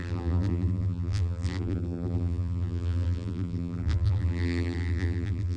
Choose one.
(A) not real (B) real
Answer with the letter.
A